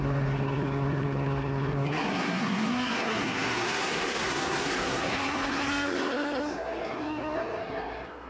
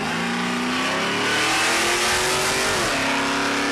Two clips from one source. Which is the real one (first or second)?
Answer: second